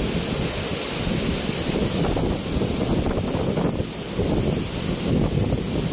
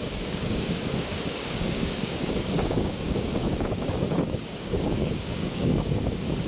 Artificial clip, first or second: second